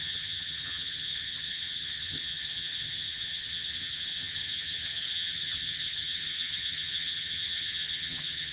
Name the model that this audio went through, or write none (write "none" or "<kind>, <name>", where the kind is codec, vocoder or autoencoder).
vocoder, HiFi-GAN